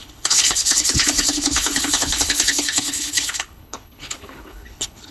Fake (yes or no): yes